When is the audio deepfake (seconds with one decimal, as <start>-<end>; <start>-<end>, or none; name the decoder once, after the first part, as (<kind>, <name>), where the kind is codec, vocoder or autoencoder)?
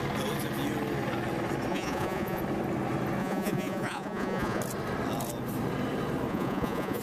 1.7-2.4 (vocoder, Vocos); 3.2-4.6; 6.3-7.0